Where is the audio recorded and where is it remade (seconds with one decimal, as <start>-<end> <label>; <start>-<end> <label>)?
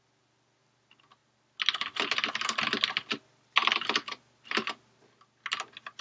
0.0-6.0 recorded